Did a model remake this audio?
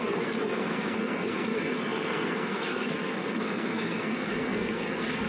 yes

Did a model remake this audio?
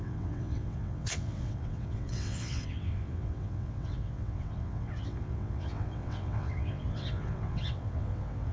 yes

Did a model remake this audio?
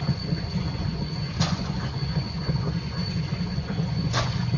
yes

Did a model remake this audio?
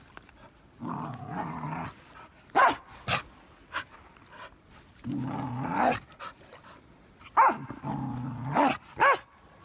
no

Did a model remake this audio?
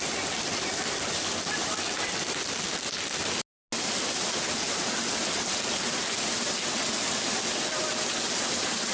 no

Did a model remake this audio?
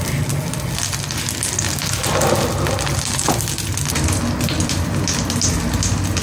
no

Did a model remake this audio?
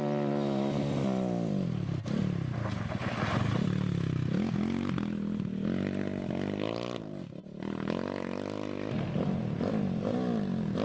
no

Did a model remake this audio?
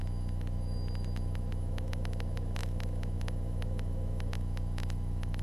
yes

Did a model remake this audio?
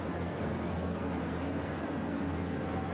yes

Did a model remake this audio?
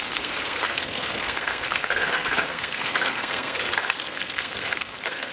yes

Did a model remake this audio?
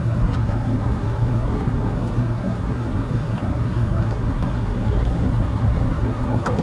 yes